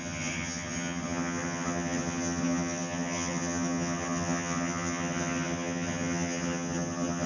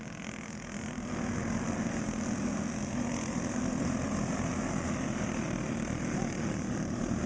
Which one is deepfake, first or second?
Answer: first